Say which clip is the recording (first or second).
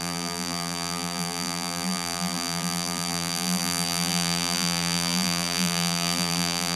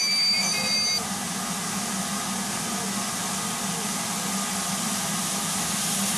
second